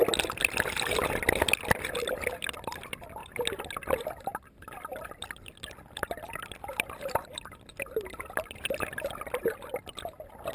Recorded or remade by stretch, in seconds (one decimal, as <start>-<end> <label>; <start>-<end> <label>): 0.0-10.5 recorded